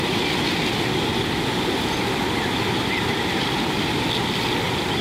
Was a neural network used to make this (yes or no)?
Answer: no